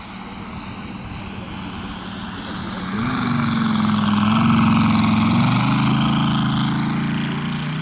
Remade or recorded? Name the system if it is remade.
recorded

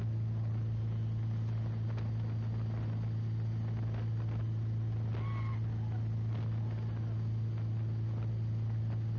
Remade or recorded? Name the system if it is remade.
recorded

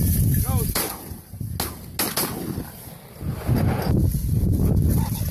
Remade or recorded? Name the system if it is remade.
recorded